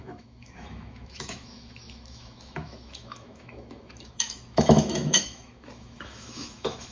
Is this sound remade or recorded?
remade